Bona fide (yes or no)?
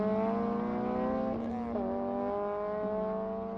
yes